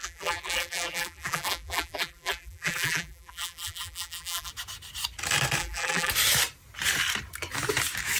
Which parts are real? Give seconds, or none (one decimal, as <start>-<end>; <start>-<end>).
4.5-5.6; 6.1-8.2